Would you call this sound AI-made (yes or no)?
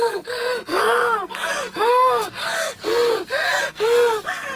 yes